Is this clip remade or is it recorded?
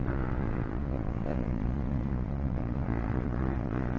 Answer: remade